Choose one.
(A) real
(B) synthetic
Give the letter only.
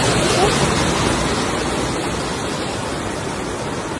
A